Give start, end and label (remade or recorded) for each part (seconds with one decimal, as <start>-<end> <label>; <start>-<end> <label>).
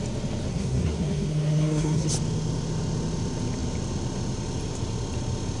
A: 0.0-0.5 recorded; 0.5-2.1 remade; 2.1-5.6 recorded